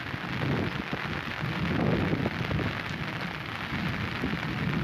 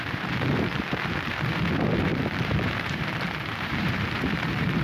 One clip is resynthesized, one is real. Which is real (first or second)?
first